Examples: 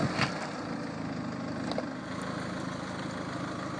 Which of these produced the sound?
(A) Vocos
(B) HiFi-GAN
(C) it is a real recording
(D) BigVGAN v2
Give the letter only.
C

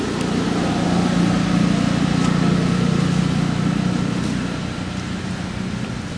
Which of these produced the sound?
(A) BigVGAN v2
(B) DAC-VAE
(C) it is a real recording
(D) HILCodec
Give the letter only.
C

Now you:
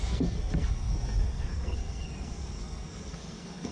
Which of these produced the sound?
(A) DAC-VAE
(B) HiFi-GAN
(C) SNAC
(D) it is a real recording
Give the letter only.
C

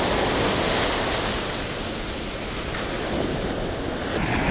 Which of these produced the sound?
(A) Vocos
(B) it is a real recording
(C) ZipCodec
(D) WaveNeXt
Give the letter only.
B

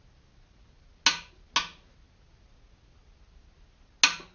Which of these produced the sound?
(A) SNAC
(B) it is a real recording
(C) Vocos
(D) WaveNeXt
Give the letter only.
B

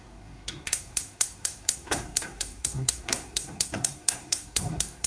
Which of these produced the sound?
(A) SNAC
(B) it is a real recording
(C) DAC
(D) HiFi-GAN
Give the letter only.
A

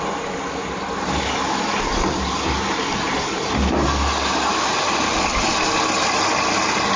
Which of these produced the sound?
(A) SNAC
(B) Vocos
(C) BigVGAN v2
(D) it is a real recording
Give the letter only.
D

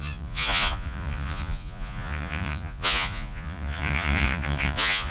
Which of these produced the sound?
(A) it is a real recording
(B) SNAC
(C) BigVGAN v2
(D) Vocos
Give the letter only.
D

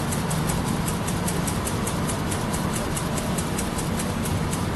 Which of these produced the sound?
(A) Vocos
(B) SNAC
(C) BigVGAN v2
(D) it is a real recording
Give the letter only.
D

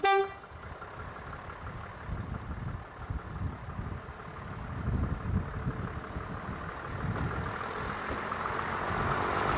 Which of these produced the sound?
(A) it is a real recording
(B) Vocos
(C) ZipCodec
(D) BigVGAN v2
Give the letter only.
A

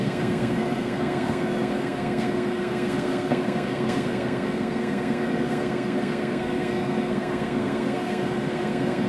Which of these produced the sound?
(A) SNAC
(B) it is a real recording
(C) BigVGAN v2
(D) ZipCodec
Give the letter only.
A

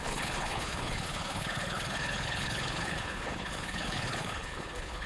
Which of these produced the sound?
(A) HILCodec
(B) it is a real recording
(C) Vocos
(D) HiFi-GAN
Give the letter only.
A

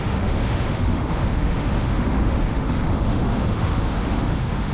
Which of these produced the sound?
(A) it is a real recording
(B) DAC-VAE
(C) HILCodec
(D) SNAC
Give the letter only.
B